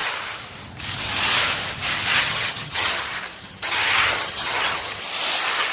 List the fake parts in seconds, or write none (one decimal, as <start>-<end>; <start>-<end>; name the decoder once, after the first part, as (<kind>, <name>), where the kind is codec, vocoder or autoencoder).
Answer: 2.1-3.0 (vocoder, HiFi-GAN); 3.4-5.0